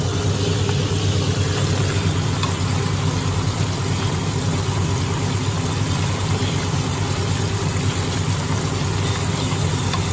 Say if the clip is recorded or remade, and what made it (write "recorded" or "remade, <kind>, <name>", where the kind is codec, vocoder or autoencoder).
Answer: recorded